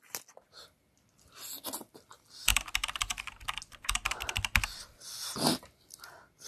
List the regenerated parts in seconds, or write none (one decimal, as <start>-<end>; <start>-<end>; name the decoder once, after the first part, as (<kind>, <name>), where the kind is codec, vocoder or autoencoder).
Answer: none